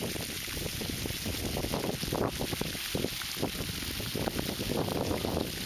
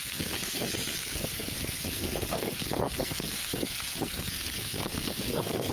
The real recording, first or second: first